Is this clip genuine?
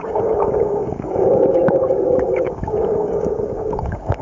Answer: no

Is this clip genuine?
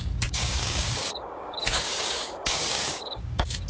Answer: no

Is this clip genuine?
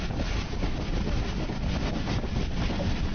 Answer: yes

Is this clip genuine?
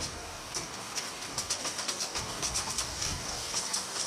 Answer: no